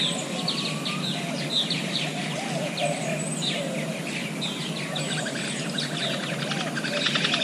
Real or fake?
real